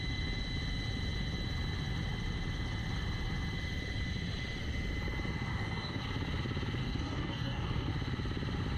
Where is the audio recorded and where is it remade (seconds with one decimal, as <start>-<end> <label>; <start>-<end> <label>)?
0.0-5.5 recorded; 5.5-6.0 remade; 6.0-6.8 recorded; 6.8-7.9 remade; 7.9-8.8 recorded